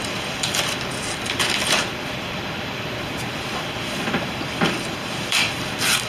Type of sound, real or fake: fake